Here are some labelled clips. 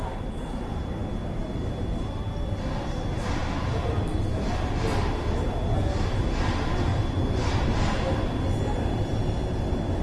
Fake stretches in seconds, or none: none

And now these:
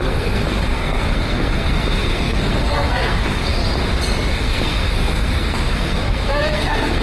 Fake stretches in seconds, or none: 0.0-3.6 (codec, SNAC); 4.3-7.0

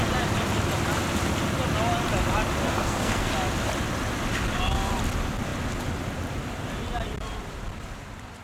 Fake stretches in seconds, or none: 2.6-3.3 (codec, SNAC)

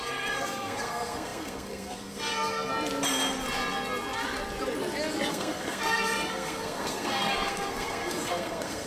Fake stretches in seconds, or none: 0.0-2.7 (codec, SNAC); 5.3-8.9

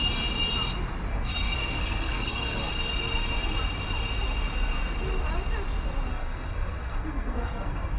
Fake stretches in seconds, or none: 1.1-2.7 (codec, SNAC); 6.1-8.0

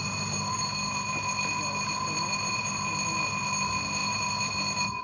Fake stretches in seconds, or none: none

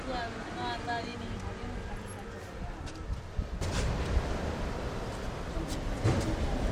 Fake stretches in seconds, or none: none